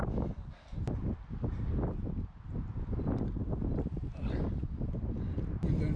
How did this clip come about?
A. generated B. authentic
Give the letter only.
B